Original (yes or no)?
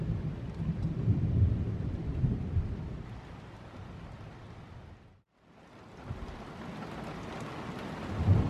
yes